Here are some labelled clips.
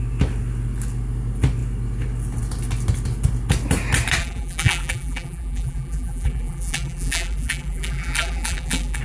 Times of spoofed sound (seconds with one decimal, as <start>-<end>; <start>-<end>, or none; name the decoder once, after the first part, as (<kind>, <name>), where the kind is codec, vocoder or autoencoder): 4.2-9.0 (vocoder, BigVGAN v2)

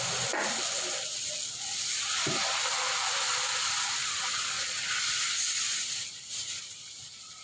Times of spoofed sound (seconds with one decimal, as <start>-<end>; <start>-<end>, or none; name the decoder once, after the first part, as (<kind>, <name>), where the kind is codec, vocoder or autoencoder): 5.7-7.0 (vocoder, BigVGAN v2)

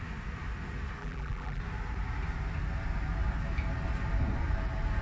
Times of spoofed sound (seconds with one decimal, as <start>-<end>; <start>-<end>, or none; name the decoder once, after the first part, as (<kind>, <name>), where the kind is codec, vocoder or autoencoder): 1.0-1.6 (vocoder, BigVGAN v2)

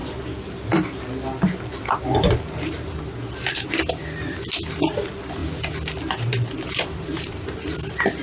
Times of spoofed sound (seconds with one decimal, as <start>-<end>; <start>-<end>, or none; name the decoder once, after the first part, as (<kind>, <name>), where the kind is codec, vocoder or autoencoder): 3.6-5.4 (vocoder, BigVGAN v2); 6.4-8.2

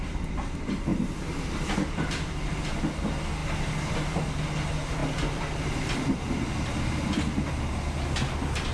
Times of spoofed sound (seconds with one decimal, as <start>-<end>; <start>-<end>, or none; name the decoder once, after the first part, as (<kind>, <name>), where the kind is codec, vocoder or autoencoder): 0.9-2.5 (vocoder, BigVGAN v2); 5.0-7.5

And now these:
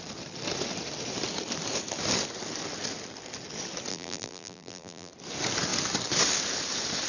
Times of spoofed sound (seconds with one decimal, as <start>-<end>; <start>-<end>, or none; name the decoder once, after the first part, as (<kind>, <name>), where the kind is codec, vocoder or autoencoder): 3.9-5.1 (vocoder, BigVGAN v2)